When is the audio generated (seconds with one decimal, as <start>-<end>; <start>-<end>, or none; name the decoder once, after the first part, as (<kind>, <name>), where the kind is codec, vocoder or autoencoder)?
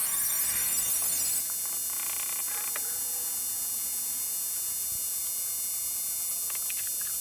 0.0-1.4 (codec, SNAC)